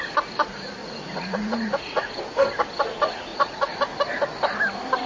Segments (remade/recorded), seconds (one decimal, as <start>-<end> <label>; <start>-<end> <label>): 0.0-0.8 recorded; 0.8-2.1 remade; 2.1-3.3 recorded; 3.3-3.8 remade; 3.8-5.1 recorded